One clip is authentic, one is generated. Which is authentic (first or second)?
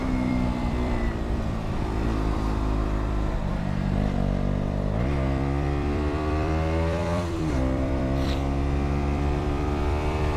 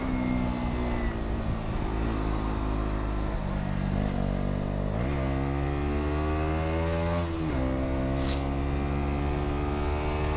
second